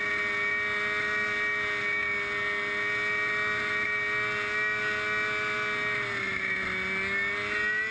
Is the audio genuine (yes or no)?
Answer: yes